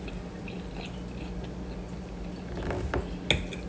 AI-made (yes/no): no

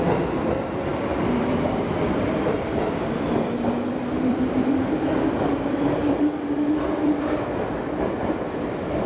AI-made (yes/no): yes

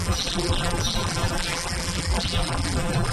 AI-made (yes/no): yes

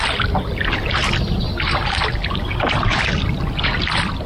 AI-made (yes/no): no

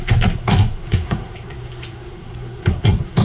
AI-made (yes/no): yes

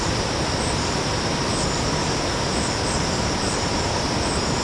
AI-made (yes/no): no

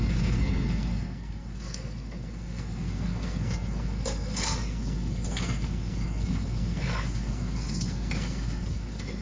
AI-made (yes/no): yes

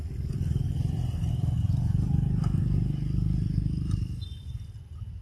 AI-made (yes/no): no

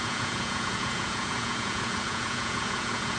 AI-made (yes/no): yes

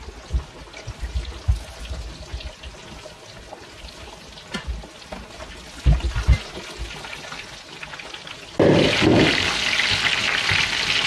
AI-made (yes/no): no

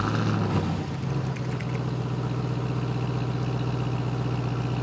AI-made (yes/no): no